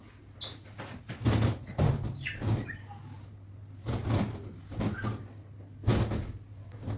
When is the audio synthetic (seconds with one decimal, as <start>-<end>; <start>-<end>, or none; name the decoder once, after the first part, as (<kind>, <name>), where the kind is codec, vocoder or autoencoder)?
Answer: none

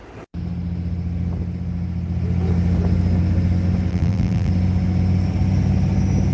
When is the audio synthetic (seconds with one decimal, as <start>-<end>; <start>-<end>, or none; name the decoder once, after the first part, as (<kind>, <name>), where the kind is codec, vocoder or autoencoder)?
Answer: 3.9-4.5 (vocoder, BigVGAN v2)

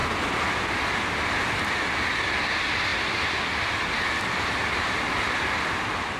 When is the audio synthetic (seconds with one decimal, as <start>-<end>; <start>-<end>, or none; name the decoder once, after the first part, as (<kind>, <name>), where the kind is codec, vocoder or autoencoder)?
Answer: 4.6-5.4 (vocoder, BigVGAN v2)